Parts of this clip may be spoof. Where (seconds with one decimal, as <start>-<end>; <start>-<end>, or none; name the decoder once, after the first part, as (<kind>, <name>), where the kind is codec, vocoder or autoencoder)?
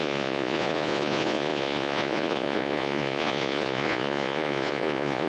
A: 0.0-5.3 (vocoder, Vocos)